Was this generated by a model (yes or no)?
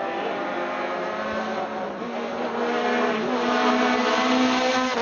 no